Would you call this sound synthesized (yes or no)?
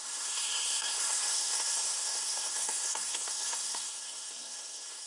yes